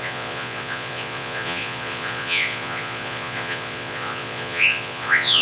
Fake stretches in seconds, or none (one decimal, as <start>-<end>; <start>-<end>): 0.0-5.4